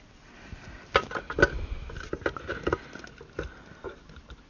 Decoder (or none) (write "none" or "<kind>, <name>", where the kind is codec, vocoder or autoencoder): none